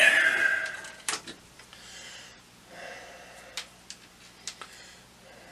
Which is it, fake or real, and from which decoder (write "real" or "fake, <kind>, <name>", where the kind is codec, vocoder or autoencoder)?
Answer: real